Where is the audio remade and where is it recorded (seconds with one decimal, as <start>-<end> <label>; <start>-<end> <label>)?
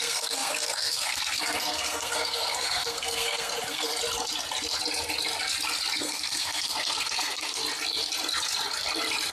0.0-3.9 remade; 3.9-6.0 recorded; 6.0-7.6 remade; 7.6-9.3 recorded